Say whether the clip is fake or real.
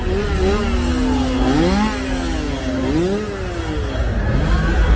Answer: real